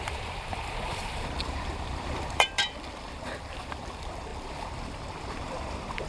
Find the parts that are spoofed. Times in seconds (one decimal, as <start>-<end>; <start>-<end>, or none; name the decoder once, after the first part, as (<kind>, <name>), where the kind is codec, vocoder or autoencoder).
0.0-4.3 (vocoder, BigVGAN v2); 5.1-6.1